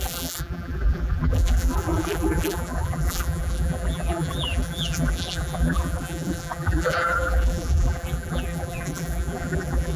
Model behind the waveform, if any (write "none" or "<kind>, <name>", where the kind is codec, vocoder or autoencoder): vocoder, BigVGAN v2